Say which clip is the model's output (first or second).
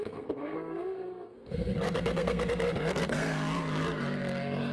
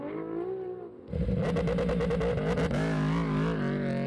first